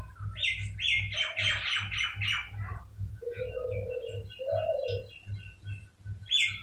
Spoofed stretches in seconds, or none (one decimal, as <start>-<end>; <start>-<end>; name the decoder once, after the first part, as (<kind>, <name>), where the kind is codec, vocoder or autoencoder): 2.9-3.4 (vocoder, Vocos)